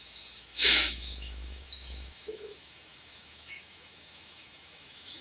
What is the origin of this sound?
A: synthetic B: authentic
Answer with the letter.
A